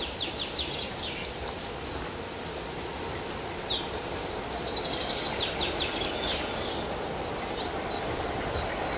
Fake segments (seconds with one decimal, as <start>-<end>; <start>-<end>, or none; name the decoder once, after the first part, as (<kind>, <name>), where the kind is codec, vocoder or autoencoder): none